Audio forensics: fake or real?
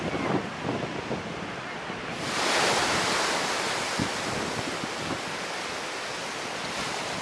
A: real